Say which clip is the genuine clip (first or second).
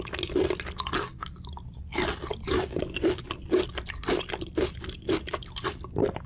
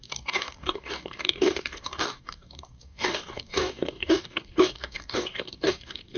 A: first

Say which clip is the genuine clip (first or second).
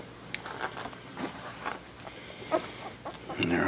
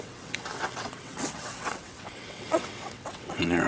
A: first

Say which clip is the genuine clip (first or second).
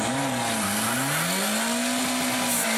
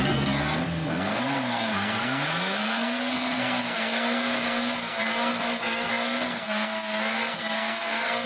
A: first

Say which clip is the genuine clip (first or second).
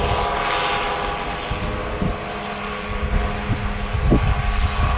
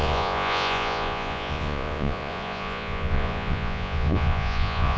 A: first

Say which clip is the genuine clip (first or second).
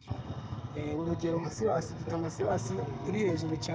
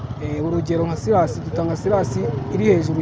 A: second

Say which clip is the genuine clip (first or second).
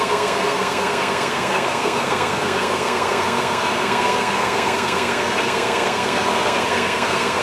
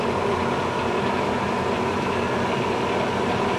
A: second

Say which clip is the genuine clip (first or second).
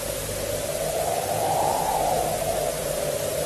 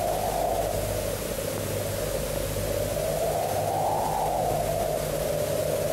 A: second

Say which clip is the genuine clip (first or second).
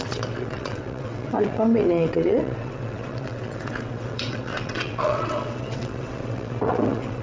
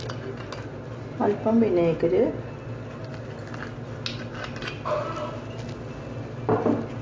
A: second